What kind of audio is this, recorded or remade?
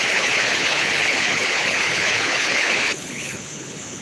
remade